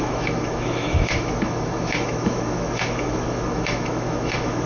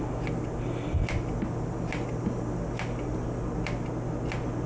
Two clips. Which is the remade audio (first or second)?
first